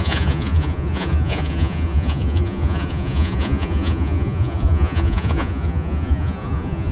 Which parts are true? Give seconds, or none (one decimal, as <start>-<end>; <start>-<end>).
none

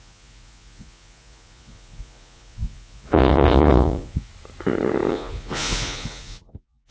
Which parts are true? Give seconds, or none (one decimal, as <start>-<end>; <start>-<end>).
4.3-5.1